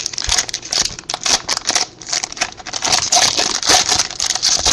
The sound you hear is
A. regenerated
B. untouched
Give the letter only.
B